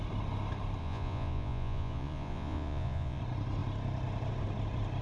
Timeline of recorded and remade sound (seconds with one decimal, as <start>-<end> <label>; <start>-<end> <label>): 0.0-0.8 recorded; 0.8-3.2 remade; 3.2-5.0 recorded